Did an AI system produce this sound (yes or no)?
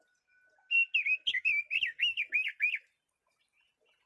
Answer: no